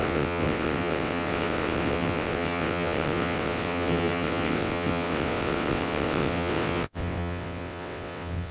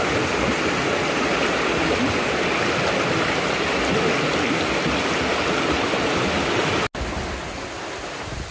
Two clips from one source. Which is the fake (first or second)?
first